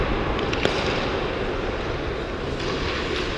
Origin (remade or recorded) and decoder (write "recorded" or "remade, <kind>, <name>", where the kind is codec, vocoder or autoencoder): recorded